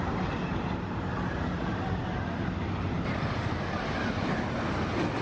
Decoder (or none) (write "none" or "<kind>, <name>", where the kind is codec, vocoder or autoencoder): none